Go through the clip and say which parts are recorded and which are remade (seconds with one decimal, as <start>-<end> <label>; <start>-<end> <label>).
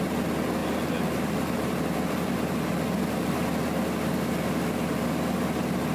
0.0-0.6 recorded; 0.6-3.3 remade; 3.3-5.9 recorded